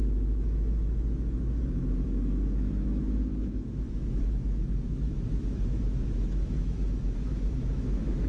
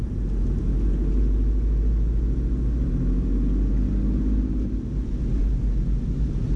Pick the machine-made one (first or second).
first